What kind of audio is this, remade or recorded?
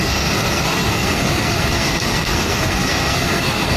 remade